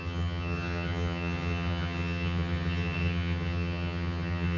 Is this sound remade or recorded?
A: remade